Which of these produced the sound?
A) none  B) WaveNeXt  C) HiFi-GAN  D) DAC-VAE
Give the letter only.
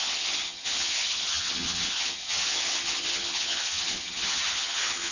C